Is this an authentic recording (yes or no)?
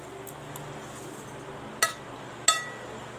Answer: yes